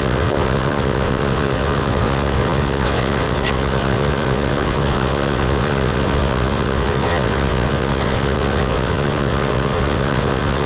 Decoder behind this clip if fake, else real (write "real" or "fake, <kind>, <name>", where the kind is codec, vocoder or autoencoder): fake, vocoder, WaveNeXt